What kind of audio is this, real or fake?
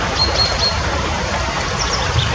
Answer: fake